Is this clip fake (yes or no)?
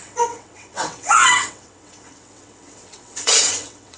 yes